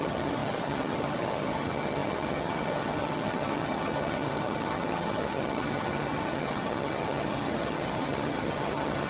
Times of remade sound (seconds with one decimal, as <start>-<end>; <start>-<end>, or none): 0.0-9.1